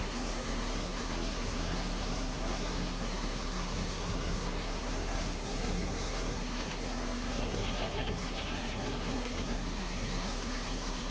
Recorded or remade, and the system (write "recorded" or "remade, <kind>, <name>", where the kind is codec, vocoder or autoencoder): remade, codec, SNAC